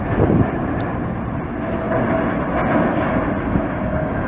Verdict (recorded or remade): recorded